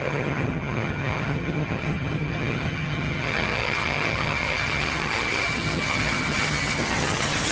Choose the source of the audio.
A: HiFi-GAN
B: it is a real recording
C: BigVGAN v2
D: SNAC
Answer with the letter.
A